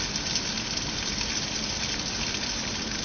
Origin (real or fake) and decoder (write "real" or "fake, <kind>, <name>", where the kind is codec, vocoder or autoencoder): real